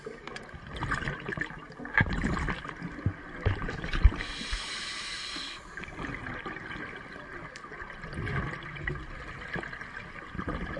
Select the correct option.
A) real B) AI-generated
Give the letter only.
A